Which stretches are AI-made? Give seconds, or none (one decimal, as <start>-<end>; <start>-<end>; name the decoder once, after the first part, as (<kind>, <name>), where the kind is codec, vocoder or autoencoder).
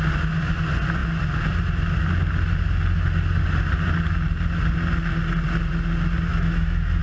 6.3-7.0 (autoencoder, DAC-VAE)